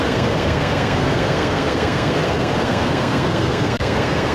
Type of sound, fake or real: fake